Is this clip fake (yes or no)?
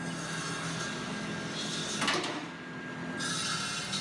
no